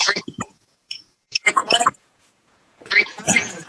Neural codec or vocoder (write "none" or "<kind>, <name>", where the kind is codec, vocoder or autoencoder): vocoder, Vocos